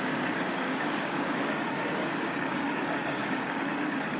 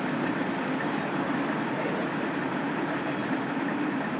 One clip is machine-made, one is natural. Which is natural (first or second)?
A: second